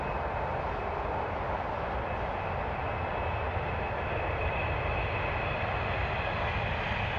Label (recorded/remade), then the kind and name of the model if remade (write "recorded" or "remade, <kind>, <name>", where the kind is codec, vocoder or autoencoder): recorded